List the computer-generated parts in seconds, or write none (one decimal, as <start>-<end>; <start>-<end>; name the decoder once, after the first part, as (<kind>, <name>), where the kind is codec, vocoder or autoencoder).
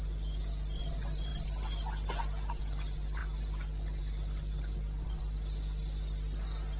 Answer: 0.0-3.2 (vocoder, BigVGAN v2); 4.0-6.8